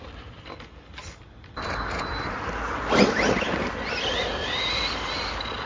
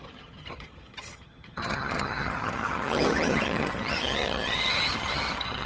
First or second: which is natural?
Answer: first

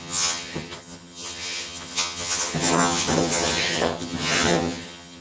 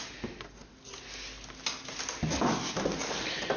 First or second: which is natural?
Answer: second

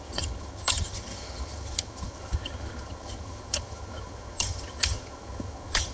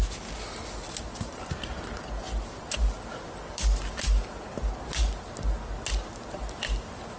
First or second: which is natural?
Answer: second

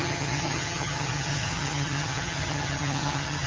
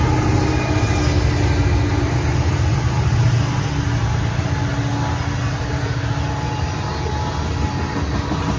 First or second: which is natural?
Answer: second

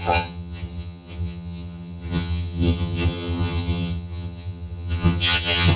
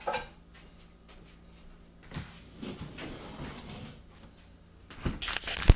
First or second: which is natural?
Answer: second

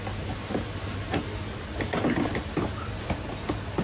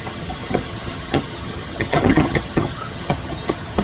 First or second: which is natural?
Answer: first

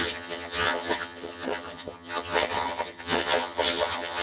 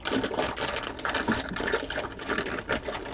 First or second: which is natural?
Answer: second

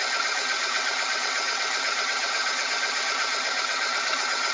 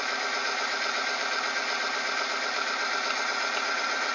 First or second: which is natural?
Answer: second